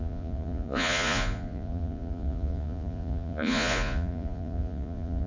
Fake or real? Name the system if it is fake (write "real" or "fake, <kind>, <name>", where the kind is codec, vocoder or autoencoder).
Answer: fake, vocoder, Vocos